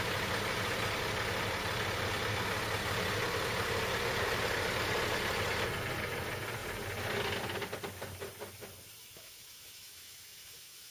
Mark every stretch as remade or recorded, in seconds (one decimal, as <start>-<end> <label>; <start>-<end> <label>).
0.0-9.0 recorded; 9.0-10.9 remade